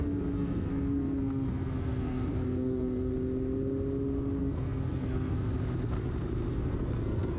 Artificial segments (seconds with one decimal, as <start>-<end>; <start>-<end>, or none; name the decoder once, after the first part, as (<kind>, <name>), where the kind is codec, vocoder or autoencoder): 0.0-3.1 (codec, SNAC); 4.4-5.5; 6.5-7.4